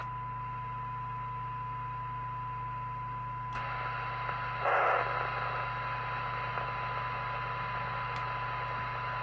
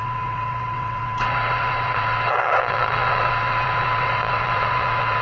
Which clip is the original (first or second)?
first